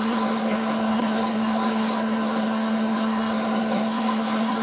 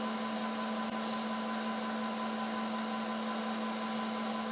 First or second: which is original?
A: second